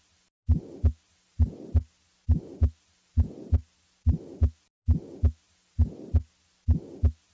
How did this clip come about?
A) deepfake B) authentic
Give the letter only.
B